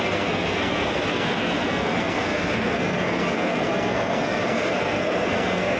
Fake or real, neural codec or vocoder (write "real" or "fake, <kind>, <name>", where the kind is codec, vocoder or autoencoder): fake, codec, SNAC